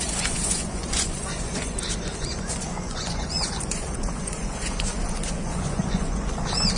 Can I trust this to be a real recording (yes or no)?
no